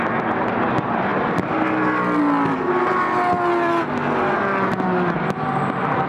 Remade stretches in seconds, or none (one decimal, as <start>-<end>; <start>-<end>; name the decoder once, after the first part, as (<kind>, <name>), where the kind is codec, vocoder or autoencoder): none